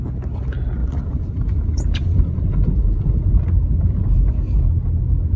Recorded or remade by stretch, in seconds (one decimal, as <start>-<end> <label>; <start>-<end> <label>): 0.0-0.8 recorded; 0.8-3.3 remade; 3.3-5.4 recorded